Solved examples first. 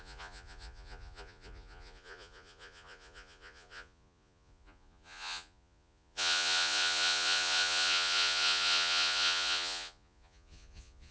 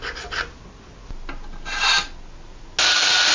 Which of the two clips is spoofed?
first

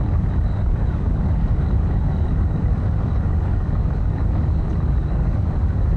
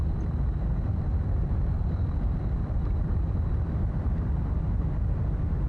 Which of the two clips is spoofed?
first